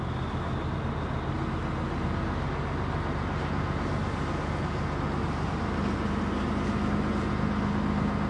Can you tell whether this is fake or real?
real